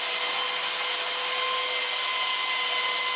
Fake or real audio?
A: real